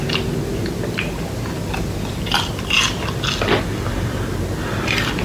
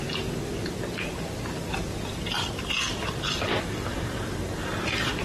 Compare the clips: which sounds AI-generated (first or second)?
second